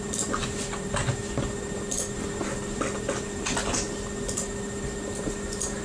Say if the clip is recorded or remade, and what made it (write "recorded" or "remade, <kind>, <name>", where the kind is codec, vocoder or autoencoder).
recorded